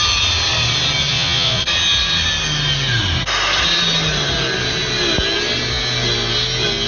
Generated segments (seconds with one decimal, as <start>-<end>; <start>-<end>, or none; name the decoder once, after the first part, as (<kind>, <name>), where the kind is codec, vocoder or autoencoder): 1.1-1.6 (vocoder, Vocos)